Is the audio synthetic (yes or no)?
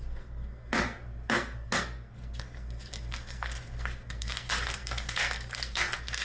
yes